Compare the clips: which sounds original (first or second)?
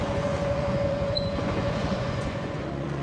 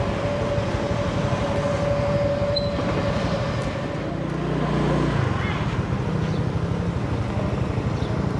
second